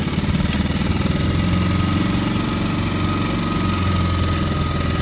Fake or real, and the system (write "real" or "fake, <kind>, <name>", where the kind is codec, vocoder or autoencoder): real